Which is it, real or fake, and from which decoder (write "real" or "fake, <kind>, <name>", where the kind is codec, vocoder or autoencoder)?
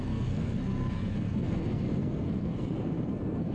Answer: fake, codec, SNAC